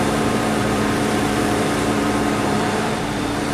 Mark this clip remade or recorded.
remade